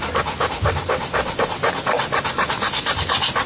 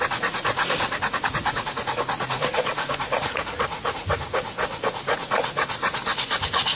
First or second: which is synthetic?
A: second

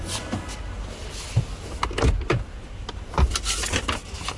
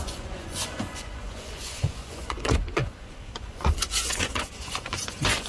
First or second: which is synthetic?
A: second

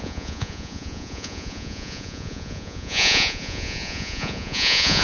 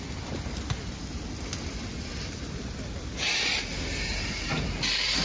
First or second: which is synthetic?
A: first